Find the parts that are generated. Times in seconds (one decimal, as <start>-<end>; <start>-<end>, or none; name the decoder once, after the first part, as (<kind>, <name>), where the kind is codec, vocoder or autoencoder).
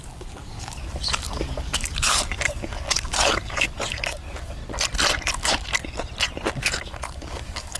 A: 0.0-4.6 (codec, DAC); 5.3-5.7; 6.5-7.8